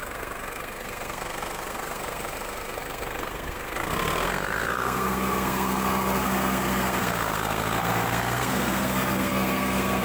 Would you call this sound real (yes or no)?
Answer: no